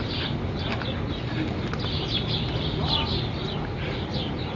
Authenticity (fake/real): real